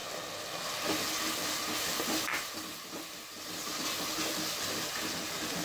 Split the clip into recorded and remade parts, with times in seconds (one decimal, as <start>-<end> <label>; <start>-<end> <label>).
0.0-5.6 recorded